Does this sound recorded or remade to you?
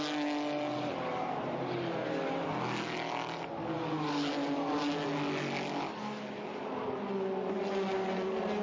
recorded